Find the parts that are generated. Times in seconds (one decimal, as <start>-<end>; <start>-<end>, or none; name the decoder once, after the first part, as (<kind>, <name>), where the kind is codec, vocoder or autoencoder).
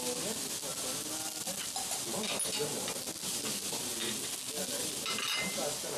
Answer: none